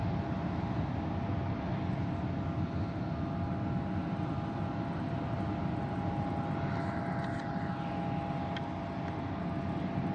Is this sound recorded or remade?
recorded